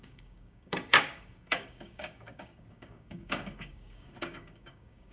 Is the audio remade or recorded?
remade